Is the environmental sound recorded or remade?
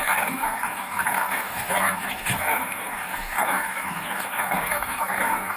remade